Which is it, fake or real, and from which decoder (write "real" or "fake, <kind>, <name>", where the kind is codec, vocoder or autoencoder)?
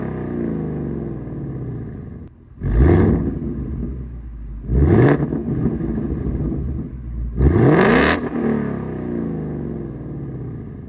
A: real